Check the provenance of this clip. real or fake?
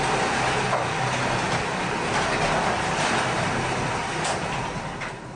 real